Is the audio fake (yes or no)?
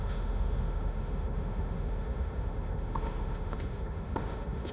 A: yes